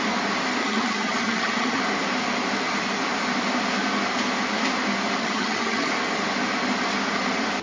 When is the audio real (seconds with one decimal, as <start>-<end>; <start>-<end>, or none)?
0.0-0.6; 1.8-5.2; 5.9-7.6